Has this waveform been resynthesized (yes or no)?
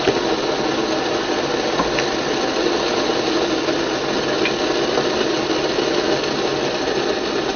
no